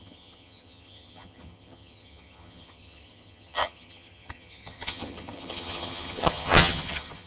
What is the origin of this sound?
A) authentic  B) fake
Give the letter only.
B